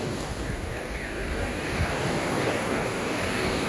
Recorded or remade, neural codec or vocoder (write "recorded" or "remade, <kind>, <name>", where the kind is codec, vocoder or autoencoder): remade, codec, DAC